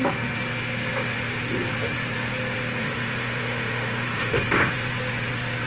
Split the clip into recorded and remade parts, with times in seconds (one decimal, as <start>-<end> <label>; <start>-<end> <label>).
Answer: 0.0-2.8 recorded; 2.8-4.3 remade; 4.3-5.7 recorded